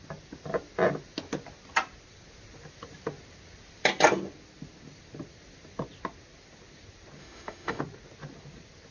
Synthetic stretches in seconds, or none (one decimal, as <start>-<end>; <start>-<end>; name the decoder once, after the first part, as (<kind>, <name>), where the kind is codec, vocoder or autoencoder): 7.2-7.8 (autoencoder, DAC-VAE)